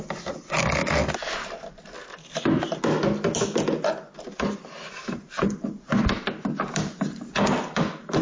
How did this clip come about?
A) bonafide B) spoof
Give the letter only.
A